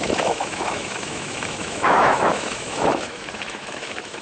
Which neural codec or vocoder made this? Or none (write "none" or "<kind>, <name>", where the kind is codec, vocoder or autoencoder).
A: autoencoder, DAC-VAE